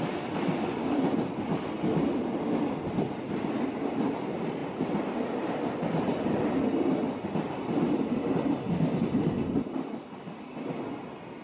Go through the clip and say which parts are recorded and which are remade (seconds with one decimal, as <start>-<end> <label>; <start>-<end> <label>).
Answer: 0.0-11.4 recorded